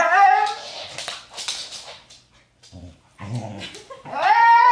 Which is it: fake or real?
real